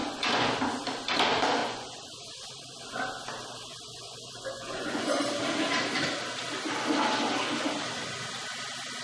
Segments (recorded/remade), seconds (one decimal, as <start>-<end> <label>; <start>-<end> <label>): 0.0-0.6 remade; 0.6-1.6 recorded; 1.6-2.8 remade; 2.8-3.7 recorded; 3.7-5.2 remade; 5.2-9.0 recorded